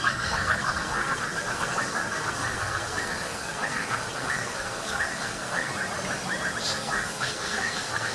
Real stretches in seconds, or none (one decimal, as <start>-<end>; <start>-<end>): 5.7-6.6